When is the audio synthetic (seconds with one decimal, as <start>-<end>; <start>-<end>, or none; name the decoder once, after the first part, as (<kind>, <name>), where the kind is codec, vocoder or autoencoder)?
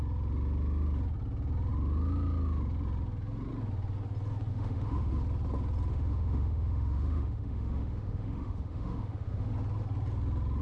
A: 4.5-5.1 (autoencoder, DAC-VAE); 5.9-9.5